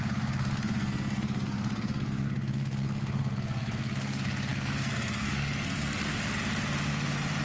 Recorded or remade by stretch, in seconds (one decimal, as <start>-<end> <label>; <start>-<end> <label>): 0.0-6.1 remade; 6.1-7.4 recorded